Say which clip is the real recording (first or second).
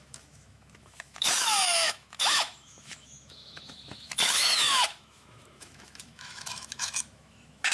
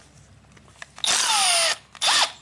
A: second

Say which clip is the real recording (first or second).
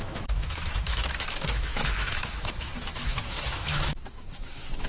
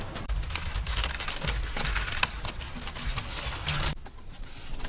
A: second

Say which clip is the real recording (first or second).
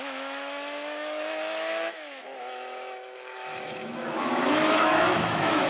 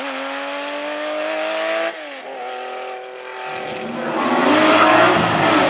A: second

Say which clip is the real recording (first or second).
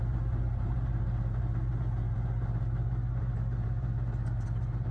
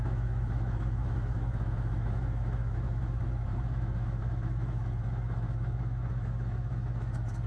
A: first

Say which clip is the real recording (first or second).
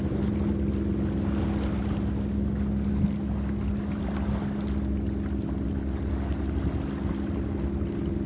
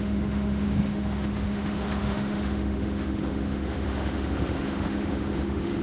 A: first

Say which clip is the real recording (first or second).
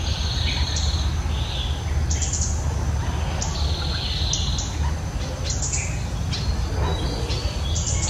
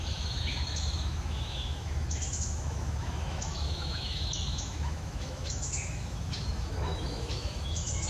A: first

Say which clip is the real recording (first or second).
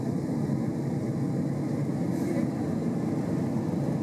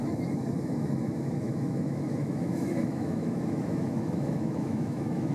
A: first